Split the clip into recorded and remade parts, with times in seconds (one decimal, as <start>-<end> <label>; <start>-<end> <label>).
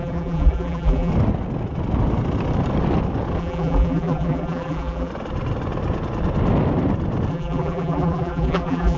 0.0-1.1 remade; 1.1-3.4 recorded; 3.4-5.1 remade; 5.1-7.3 recorded; 7.3-9.0 remade